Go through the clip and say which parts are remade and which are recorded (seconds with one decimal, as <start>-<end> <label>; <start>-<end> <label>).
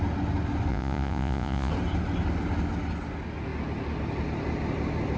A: 0.0-0.7 recorded; 0.7-1.7 remade; 1.7-5.2 recorded